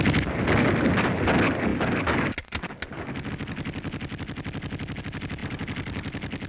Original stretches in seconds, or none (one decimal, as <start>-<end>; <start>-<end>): 0.0-6.5

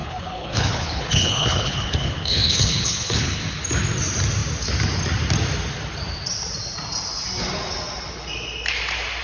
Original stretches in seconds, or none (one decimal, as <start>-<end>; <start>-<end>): 3.4-9.2

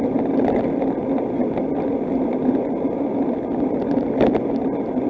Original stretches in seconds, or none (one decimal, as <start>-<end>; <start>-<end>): 0.0-5.1

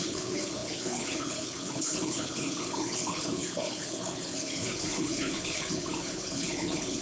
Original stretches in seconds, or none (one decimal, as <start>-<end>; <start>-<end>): none

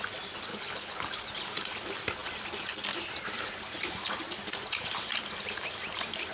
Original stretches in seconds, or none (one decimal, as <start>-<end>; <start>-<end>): 0.0-0.5; 1.1-6.3

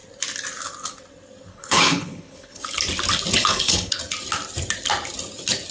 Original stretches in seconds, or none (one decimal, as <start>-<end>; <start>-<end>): 0.0-1.5; 2.6-3.4; 4.0-5.7

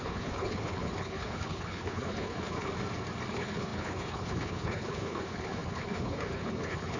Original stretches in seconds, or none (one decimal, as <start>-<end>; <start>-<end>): 2.7-3.3